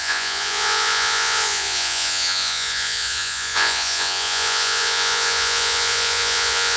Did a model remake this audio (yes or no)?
yes